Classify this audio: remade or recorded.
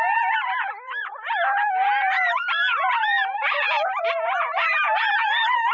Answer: remade